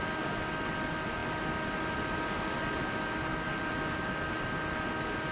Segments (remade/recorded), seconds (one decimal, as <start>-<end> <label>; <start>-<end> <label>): 0.0-5.3 recorded